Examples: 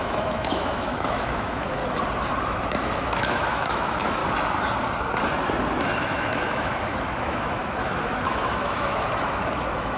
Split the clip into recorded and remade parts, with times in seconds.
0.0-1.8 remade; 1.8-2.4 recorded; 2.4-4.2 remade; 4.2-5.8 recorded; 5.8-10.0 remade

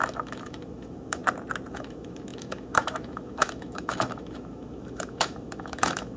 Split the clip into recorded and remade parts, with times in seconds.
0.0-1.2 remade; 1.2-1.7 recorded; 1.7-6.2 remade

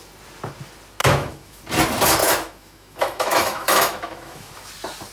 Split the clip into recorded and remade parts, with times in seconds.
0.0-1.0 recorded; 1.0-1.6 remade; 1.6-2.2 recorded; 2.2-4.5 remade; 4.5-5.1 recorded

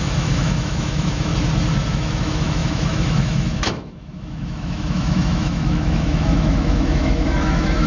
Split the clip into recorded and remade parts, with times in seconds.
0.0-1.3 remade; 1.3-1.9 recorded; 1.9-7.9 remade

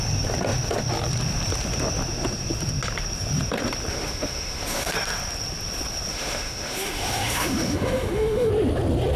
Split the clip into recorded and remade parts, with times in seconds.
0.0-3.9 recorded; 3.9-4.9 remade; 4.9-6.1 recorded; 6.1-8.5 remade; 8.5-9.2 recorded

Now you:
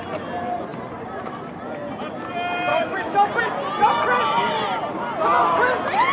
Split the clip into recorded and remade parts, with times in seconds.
0.0-2.7 recorded; 2.7-3.3 remade; 3.3-6.1 recorded

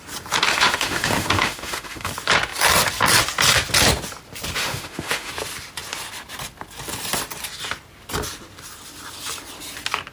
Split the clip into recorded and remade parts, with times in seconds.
0.0-0.5 recorded; 0.5-2.1 remade; 2.1-4.6 recorded; 4.6-5.3 remade; 5.3-10.1 recorded

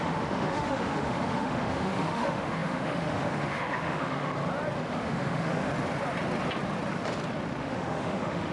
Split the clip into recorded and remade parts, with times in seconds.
0.0-4.3 remade; 4.3-4.9 recorded; 4.9-5.7 remade; 5.7-7.6 recorded; 7.6-8.5 remade